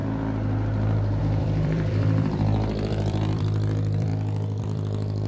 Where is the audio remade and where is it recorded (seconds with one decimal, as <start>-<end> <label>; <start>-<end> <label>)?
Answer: 0.0-1.2 recorded; 1.2-4.1 remade; 4.1-4.6 recorded; 4.6-5.3 remade